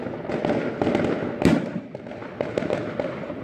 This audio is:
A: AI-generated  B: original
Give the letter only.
B